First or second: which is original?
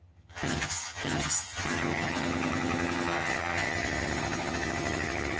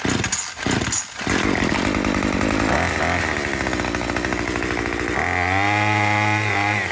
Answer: second